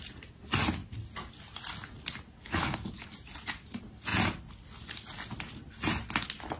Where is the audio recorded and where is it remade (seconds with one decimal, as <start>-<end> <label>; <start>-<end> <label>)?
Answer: 0.0-2.4 recorded; 2.4-3.1 remade; 3.1-6.6 recorded